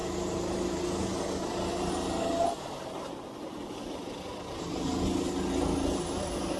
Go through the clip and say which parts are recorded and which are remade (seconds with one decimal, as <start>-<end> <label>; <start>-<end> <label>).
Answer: 0.0-6.6 recorded